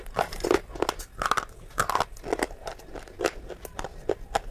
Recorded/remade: recorded